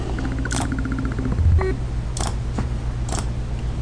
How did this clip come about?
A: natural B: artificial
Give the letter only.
A